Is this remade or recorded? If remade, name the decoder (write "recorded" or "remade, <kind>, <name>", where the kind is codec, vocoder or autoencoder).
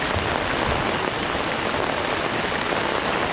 recorded